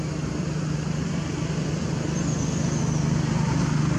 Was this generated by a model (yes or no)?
no